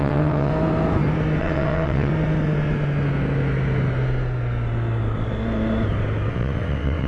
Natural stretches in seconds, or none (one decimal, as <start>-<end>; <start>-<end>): 0.5-1.4; 2.1-6.3